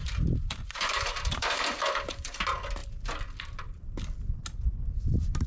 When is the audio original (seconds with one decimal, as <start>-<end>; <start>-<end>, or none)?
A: 2.4-5.5